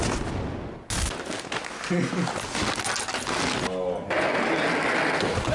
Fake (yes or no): no